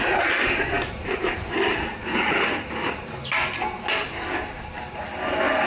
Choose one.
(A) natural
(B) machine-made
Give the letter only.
A